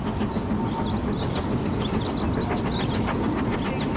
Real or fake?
real